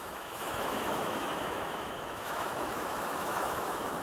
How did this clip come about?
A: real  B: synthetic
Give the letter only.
B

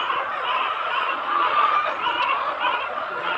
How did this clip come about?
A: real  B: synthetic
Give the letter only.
B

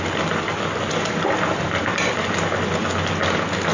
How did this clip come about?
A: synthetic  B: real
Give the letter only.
B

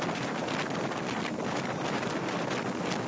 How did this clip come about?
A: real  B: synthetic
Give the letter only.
A